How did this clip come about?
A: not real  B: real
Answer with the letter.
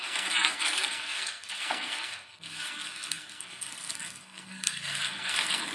A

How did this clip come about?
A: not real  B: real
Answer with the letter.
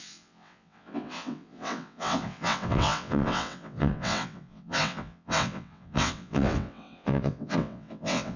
A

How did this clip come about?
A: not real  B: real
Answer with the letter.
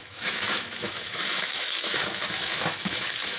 A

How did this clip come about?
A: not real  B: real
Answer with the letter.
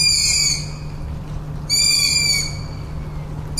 B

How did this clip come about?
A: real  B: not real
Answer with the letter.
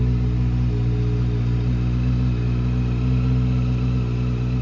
A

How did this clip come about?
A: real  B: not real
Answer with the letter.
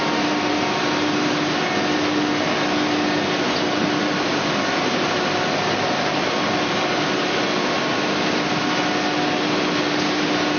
A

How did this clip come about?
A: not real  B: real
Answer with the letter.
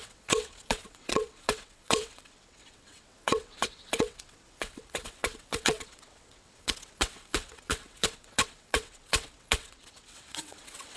A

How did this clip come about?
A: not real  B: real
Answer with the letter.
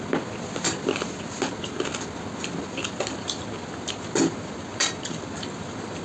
B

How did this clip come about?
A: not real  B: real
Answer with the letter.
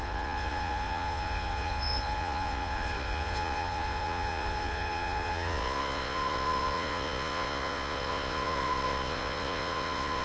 A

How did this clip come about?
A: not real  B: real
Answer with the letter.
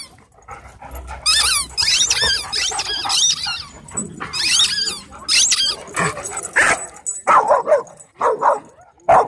B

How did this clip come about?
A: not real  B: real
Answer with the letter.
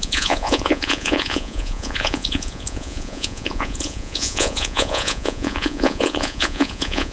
A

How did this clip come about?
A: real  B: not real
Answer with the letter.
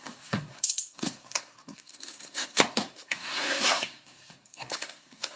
B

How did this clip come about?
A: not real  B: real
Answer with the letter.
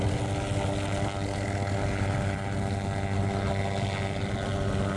B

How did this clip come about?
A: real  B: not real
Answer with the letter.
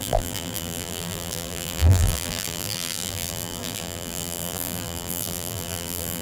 B